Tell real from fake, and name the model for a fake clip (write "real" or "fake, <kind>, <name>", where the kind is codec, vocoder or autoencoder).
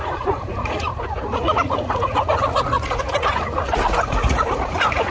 fake, vocoder, Vocos